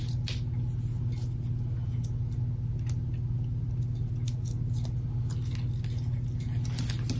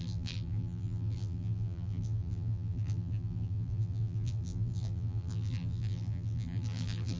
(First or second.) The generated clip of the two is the second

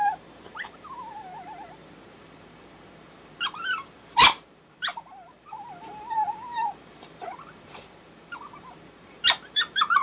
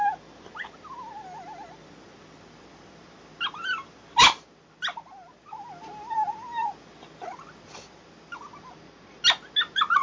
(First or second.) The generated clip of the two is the first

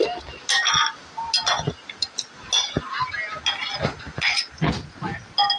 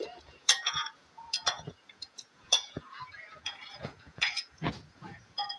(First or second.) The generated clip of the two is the second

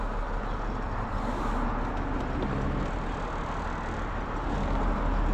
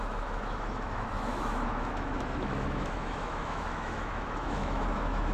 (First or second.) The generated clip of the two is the second